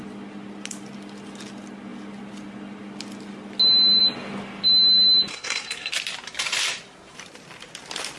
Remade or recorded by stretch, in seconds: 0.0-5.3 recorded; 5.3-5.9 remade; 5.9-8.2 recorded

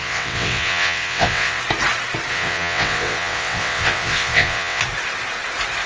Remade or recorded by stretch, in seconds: 0.0-1.6 remade; 1.6-2.3 recorded; 2.3-4.8 remade; 4.8-5.9 recorded

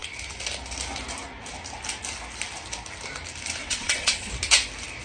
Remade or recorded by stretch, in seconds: 0.0-3.6 recorded; 3.6-4.3 remade; 4.3-5.0 recorded

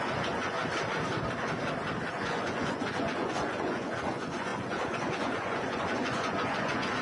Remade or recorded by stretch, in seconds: 0.0-0.6 remade; 0.6-2.1 recorded; 2.1-7.0 remade

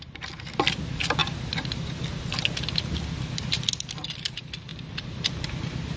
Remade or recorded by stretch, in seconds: 0.0-6.0 recorded

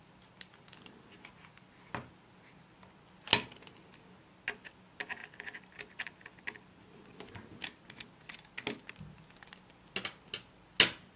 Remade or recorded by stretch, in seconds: 0.0-11.2 recorded

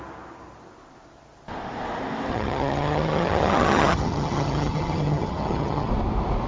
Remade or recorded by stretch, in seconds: 0.0-2.3 recorded; 2.3-5.9 remade; 5.9-6.5 recorded

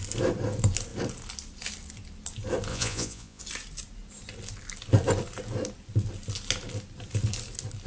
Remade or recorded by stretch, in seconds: 0.0-2.7 recorded; 2.7-3.4 remade; 3.4-7.9 recorded